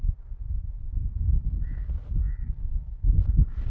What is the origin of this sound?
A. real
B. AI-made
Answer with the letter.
A